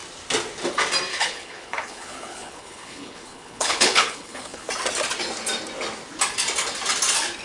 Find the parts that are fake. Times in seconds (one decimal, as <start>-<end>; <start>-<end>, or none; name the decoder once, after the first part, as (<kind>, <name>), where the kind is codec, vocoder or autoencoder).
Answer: 1.1-4.7 (codec, HILCodec)